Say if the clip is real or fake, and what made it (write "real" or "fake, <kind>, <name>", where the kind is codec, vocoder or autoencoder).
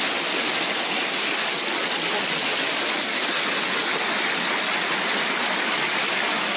real